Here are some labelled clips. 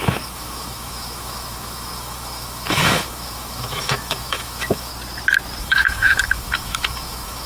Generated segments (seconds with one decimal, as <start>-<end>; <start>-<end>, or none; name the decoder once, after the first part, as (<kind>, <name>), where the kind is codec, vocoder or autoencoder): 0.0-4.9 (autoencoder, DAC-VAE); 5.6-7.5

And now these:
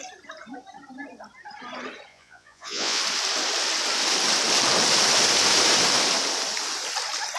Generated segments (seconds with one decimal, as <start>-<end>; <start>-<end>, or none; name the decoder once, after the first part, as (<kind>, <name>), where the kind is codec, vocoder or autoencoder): 2.1-3.0 (vocoder, Vocos)

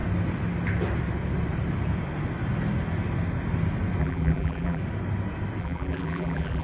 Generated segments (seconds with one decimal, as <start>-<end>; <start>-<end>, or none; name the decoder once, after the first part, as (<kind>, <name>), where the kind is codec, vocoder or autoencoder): 4.0-4.8 (vocoder, BigVGAN v2); 5.6-6.6

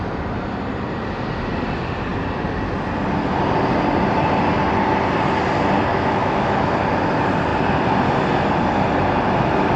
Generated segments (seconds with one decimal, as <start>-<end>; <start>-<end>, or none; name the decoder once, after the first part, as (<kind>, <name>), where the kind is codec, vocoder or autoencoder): 5.9-6.7 (autoencoder, DAC-VAE)

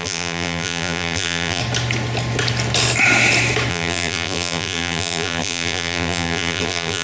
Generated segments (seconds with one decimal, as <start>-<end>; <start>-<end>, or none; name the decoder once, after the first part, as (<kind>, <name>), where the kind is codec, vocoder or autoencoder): 0.0-1.6 (vocoder, BigVGAN v2); 3.7-7.0

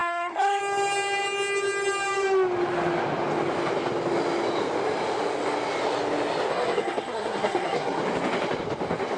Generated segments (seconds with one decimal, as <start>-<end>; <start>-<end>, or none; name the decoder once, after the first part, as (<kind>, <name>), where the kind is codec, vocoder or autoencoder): 0.0-0.6 (codec, SNAC); 6.5-8.0

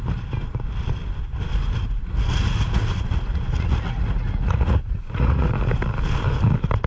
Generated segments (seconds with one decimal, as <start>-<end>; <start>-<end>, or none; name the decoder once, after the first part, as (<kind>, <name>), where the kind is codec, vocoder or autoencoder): 1.5-5.5 (vocoder, Vocos)

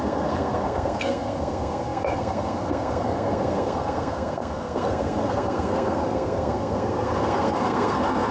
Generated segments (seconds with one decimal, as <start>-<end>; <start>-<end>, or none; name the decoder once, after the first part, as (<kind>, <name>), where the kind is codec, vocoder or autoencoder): 0.0-8.3 (codec, SNAC)